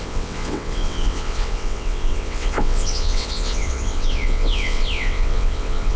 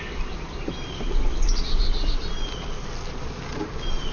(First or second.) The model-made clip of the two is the first